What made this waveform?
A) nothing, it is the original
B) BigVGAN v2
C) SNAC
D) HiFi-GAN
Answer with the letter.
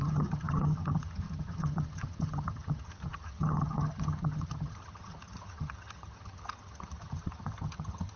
D